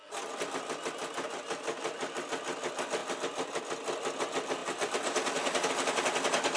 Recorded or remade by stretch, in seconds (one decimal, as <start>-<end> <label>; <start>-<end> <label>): 0.0-4.6 recorded; 4.6-5.7 remade; 5.7-6.6 recorded